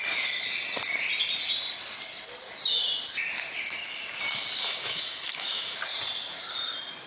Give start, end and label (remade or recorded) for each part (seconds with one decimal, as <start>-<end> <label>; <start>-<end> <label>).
0.0-4.6 recorded; 4.6-5.8 remade; 5.8-7.1 recorded